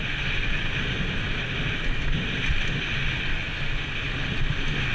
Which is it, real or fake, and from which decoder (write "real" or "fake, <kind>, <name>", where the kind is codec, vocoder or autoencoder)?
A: real